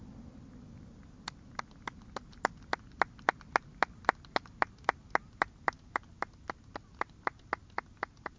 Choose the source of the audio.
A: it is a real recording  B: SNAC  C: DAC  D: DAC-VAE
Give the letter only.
A